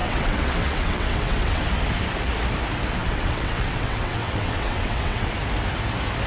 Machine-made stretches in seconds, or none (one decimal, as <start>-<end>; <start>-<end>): 0.0-1.6; 3.0-5.3